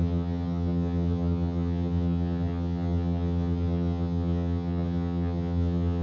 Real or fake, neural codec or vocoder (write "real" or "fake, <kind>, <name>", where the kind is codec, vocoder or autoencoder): fake, vocoder, HiFi-GAN